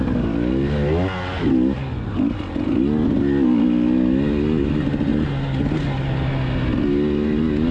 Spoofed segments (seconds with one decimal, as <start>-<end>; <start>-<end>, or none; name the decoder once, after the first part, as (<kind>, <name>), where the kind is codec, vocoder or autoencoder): none